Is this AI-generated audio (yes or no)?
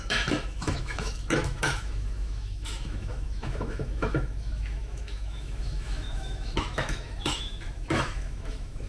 yes